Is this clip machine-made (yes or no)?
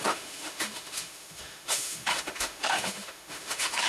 yes